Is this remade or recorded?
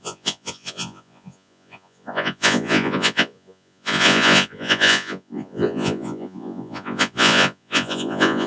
remade